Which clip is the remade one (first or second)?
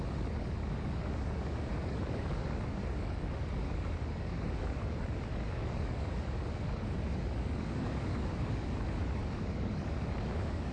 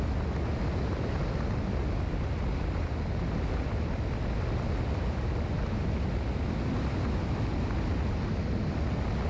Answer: first